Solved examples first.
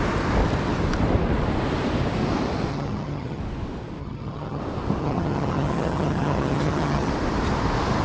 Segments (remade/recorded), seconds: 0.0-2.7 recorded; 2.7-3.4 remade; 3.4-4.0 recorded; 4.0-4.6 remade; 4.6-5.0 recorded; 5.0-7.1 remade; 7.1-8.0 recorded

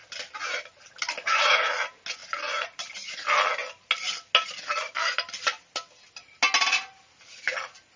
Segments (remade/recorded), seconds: 0.0-8.0 recorded

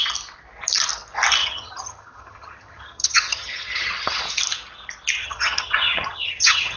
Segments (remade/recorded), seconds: 0.0-1.4 recorded; 1.4-4.2 remade; 4.2-5.2 recorded; 5.2-6.8 remade

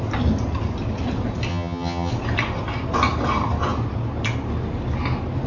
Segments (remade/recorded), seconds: 0.0-1.5 recorded; 1.5-2.1 remade; 2.1-5.5 recorded

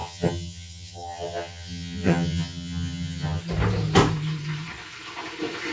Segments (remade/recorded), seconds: 0.0-3.4 remade; 3.4-5.7 recorded

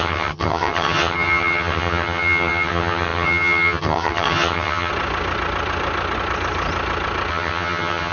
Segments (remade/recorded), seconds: 0.0-4.9 remade; 4.9-7.3 recorded; 7.3-8.1 remade

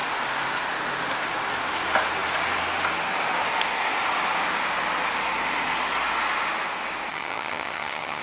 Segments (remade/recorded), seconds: 0.0-7.1 recorded; 7.1-8.2 remade